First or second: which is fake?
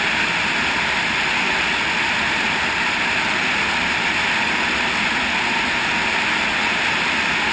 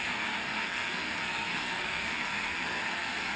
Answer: second